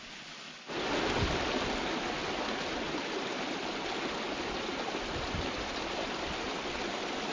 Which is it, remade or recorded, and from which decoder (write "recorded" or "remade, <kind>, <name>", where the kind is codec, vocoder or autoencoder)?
recorded